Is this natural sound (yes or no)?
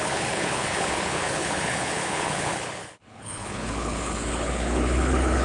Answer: no